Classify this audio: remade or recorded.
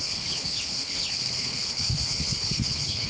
remade